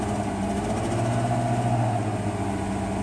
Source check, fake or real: real